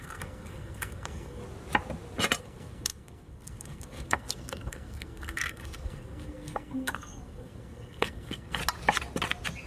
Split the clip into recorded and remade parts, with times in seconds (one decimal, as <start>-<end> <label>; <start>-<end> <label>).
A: 0.0-1.4 remade; 1.4-2.4 recorded; 2.4-8.6 remade; 8.6-9.7 recorded